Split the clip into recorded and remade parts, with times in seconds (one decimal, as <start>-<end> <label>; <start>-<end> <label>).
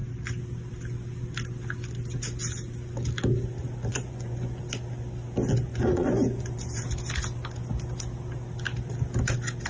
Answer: 0.0-3.9 recorded; 3.9-4.6 remade; 4.6-5.7 recorded; 5.7-6.9 remade; 6.9-9.7 recorded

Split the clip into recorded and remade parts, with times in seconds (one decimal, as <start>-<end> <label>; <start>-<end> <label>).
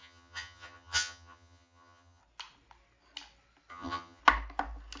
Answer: 0.0-2.2 remade; 2.2-3.7 recorded; 3.7-4.2 remade; 4.2-5.0 recorded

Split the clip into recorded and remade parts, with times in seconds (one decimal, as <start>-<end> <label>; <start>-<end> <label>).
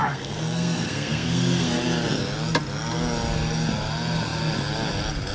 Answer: 0.0-1.8 remade; 1.8-5.3 recorded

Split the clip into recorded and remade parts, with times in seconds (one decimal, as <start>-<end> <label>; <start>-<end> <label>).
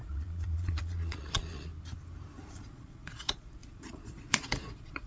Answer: 0.0-1.7 remade; 1.7-2.5 recorded; 2.5-5.1 remade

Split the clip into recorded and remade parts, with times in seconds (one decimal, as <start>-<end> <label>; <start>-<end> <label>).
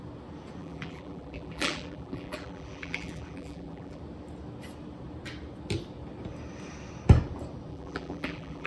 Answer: 0.0-0.6 recorded; 0.6-4.0 remade; 4.0-7.7 recorded; 7.7-8.7 remade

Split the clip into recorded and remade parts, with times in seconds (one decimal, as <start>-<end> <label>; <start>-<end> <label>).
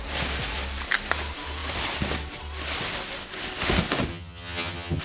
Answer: 0.0-4.1 recorded; 4.1-5.0 remade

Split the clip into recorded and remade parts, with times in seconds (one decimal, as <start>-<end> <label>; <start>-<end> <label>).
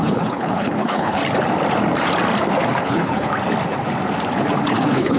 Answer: 0.0-1.2 remade; 1.2-2.8 recorded; 2.8-3.3 remade; 3.3-4.7 recorded; 4.7-5.2 remade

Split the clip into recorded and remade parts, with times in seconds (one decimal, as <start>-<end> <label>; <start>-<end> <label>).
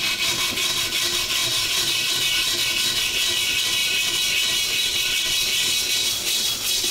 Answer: 0.0-1.4 recorded; 1.4-2.1 remade; 2.1-6.9 recorded